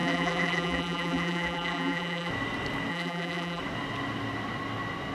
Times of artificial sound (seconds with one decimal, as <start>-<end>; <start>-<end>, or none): 0.0-2.3; 2.9-3.6